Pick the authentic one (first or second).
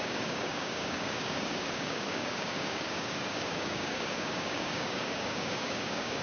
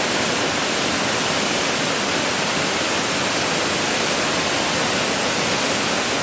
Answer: second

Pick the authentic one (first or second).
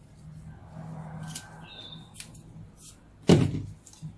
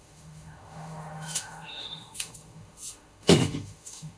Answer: first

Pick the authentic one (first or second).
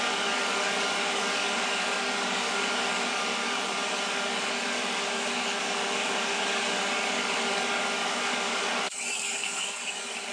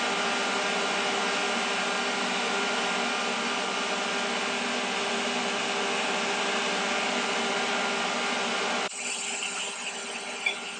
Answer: second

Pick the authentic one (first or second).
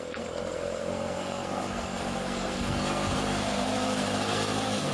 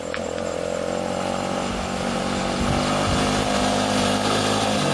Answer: second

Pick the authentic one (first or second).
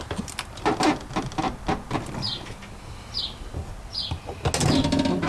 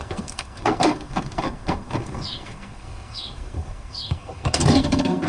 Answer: first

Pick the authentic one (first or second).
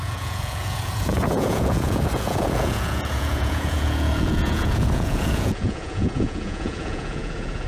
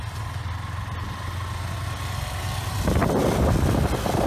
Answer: second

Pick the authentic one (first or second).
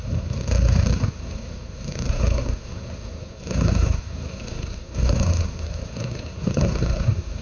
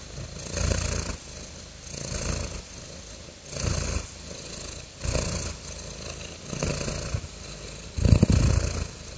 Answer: second